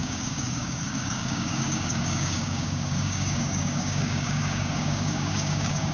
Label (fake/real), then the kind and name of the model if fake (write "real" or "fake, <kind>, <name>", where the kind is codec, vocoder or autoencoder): fake, codec, DAC